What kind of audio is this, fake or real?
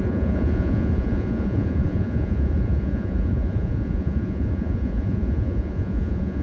fake